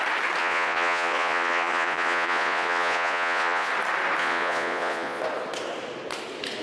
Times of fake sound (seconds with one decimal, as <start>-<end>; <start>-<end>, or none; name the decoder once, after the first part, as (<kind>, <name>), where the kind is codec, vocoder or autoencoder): 0.4-3.7 (vocoder, Vocos); 4.2-5.2